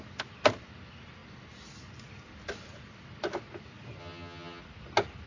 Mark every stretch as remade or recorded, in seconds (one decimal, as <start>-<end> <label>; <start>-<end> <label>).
0.0-4.0 recorded; 4.0-4.6 remade; 4.6-5.3 recorded